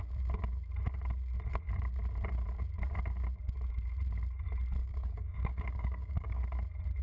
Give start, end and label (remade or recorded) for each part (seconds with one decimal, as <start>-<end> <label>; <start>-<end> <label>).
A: 0.0-4.8 recorded; 4.8-6.4 remade; 6.4-7.0 recorded